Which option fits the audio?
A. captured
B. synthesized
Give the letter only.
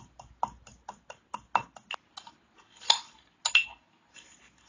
A